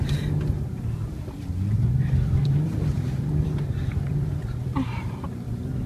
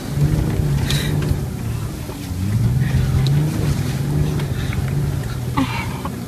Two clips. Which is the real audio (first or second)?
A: second